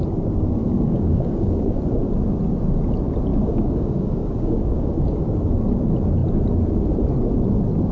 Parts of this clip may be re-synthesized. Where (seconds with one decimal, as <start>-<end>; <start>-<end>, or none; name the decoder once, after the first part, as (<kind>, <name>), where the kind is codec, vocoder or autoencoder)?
0.6-1.8 (codec, DAC); 3.3-5.2